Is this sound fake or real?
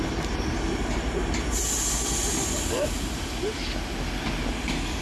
real